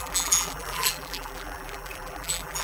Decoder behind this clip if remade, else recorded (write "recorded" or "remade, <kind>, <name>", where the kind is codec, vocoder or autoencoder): remade, vocoder, BigVGAN v2